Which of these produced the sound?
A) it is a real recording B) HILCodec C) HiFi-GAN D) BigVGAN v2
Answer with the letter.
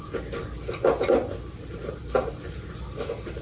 A